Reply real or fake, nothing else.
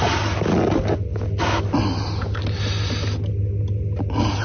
real